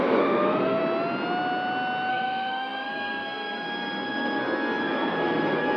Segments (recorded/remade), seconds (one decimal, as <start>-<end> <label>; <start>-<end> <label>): 0.0-0.8 remade; 0.8-2.1 recorded; 2.1-5.8 remade